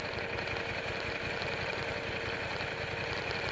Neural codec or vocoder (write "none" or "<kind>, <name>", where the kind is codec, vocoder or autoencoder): none